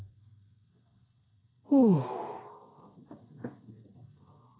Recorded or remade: remade